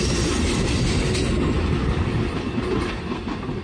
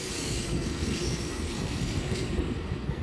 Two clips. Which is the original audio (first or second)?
first